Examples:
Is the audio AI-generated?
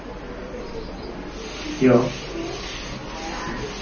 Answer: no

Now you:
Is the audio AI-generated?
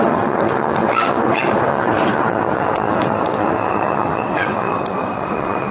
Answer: yes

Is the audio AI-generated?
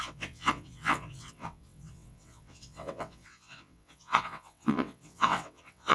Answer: yes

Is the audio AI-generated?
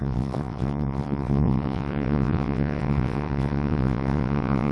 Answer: yes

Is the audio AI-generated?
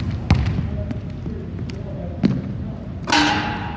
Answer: no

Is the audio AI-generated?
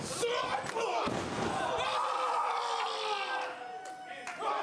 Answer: no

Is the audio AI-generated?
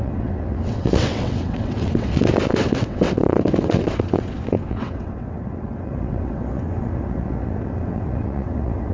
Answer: yes